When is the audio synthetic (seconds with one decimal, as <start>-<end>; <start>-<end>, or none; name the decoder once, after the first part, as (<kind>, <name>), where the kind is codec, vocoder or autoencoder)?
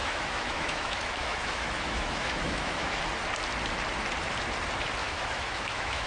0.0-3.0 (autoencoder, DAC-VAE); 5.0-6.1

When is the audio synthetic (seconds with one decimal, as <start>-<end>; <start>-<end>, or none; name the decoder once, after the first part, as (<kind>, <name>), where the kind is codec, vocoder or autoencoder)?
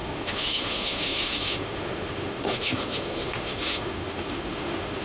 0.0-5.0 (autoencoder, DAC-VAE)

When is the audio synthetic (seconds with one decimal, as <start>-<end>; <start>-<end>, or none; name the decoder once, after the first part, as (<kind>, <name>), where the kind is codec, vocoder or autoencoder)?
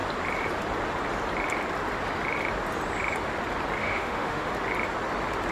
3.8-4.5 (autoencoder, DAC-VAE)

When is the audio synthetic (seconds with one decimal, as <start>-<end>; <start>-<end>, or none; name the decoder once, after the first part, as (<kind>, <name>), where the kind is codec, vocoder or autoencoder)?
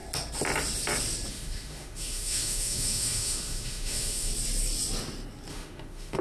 1.3-4.3 (autoencoder, DAC-VAE); 5.5-6.2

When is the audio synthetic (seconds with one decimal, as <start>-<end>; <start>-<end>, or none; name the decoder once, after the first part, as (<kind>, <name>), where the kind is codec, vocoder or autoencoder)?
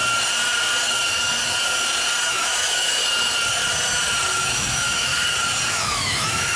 2.3-3.0 (autoencoder, DAC-VAE); 4.3-5.1; 5.7-6.6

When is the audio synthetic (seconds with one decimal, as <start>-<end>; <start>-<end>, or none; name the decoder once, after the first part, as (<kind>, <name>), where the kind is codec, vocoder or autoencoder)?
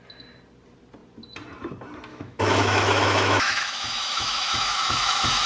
2.1-5.5 (autoencoder, DAC-VAE)